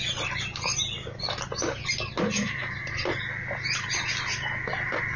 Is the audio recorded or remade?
recorded